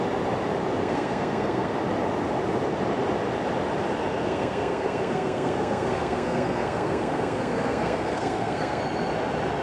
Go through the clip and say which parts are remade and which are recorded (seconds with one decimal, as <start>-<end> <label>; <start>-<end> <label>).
0.0-0.8 recorded; 0.8-1.7 remade; 1.7-4.2 recorded; 4.2-8.8 remade; 8.8-9.6 recorded